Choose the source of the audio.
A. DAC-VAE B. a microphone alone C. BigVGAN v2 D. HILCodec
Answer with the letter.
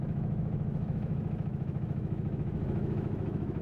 A